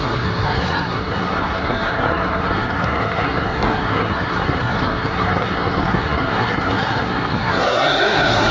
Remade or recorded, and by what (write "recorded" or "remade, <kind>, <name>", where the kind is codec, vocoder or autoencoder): remade, codec, SNAC